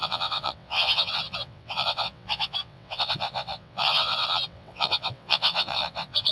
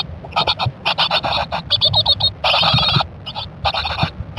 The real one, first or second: second